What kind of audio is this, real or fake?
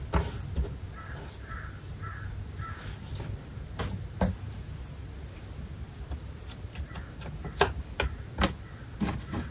real